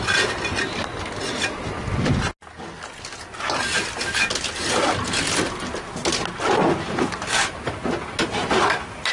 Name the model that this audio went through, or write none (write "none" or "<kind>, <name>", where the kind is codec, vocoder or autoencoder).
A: none